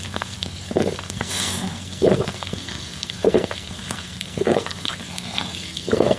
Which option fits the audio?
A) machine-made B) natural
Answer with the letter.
A